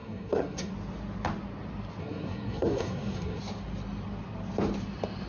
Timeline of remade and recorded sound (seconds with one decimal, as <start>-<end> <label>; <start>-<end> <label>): 0.0-0.7 remade; 0.7-2.0 recorded; 2.0-3.4 remade; 3.4-5.3 recorded